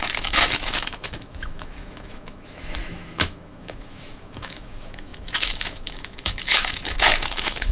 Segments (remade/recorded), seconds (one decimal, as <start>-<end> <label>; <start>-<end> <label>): 0.0-7.7 remade